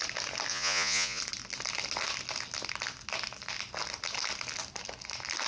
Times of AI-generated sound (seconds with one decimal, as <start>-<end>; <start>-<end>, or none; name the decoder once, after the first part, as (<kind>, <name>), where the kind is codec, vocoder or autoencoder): 0.5-1.2 (vocoder, Vocos)